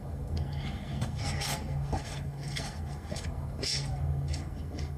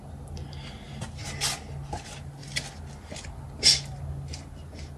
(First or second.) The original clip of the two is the second